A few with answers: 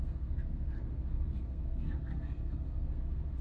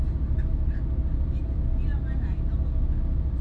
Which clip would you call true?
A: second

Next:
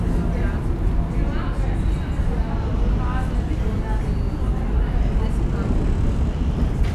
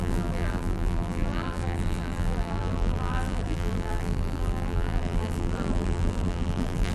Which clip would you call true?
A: first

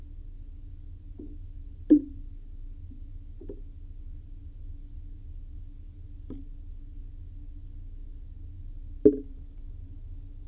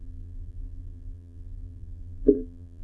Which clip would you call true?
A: first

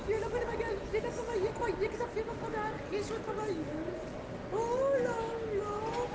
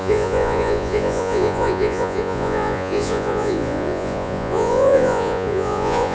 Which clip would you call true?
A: first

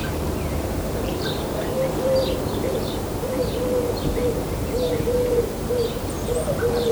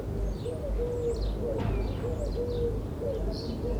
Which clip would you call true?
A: second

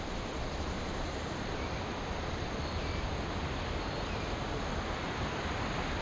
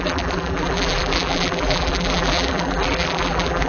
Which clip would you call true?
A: first